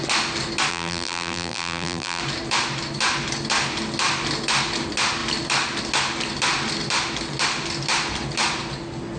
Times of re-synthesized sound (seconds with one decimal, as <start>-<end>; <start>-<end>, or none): 0.7-2.2